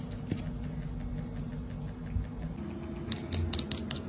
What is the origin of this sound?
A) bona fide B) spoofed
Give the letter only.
A